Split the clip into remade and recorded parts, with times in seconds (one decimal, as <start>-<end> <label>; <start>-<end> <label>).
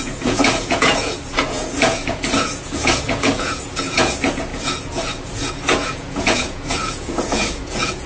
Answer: 0.0-8.1 remade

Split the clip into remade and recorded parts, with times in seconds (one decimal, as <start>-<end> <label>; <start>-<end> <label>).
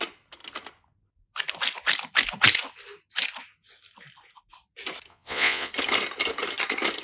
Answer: 0.0-5.1 recorded; 5.1-5.7 remade; 5.7-7.0 recorded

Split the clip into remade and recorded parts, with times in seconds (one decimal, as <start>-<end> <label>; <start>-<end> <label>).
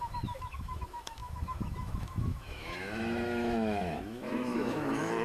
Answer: 0.0-5.2 remade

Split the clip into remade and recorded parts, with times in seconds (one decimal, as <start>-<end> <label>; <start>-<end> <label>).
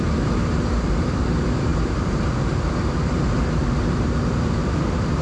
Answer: 0.0-0.4 remade; 0.4-0.9 recorded; 0.9-5.2 remade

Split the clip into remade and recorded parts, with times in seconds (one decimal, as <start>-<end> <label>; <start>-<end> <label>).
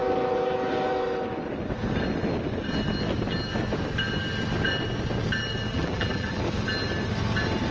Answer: 0.0-5.7 recorded; 5.7-6.4 remade; 6.4-7.7 recorded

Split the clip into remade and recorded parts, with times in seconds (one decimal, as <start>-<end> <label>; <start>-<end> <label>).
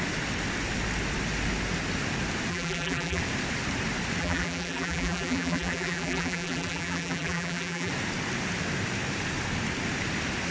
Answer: 0.0-2.5 recorded; 2.5-3.2 remade; 3.2-4.2 recorded; 4.2-7.9 remade; 7.9-10.5 recorded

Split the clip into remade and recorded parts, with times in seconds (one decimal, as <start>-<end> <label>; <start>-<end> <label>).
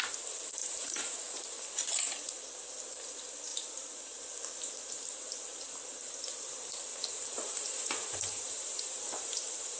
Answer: 0.0-0.6 recorded; 0.6-1.2 remade; 1.2-3.5 recorded; 3.5-4.2 remade; 4.2-6.9 recorded; 6.9-9.8 remade